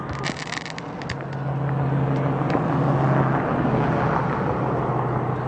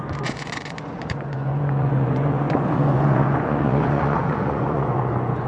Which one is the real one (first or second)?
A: first